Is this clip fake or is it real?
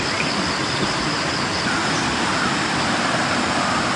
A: real